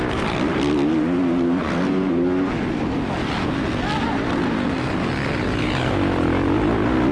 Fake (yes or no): no